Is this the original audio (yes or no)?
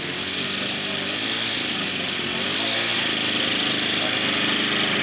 yes